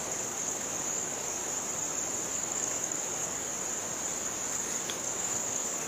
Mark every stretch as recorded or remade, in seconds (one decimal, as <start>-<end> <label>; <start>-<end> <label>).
0.0-1.4 remade; 1.4-2.3 recorded; 2.3-3.5 remade; 3.5-4.5 recorded; 4.5-5.9 remade